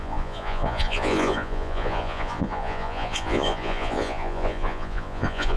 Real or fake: fake